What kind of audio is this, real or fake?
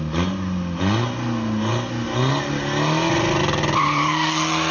real